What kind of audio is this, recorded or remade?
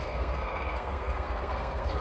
remade